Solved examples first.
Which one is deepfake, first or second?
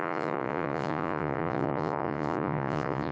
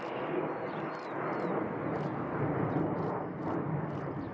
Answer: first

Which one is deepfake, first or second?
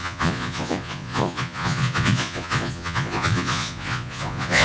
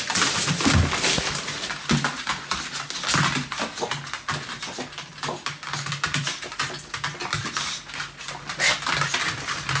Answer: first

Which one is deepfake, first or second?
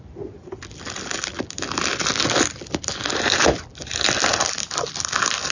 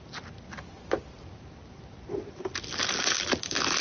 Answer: first